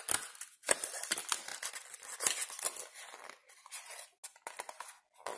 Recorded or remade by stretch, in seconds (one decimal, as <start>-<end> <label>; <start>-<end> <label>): 0.0-5.4 recorded